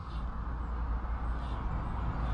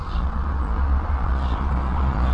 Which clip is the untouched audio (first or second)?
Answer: first